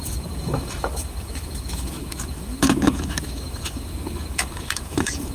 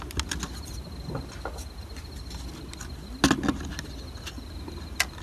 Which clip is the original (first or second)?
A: second